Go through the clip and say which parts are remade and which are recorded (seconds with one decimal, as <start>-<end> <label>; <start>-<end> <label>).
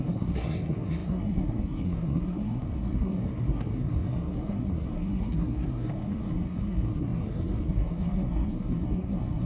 0.0-9.5 remade